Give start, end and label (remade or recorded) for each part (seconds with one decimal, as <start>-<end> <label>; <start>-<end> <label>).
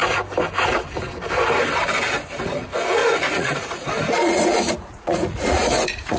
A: 0.0-3.0 recorded; 3.0-6.2 remade